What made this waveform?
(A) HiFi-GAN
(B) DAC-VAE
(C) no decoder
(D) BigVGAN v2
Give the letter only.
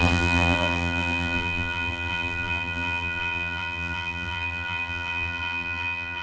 D